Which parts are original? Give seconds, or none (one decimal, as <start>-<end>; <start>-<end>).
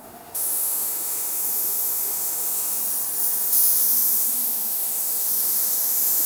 2.8-3.3